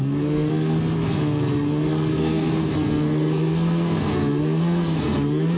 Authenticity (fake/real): fake